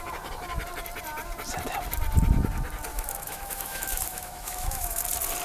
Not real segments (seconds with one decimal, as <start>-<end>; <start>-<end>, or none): 2.9-5.0